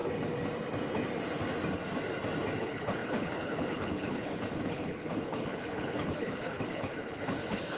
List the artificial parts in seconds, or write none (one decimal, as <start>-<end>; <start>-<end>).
2.6-7.8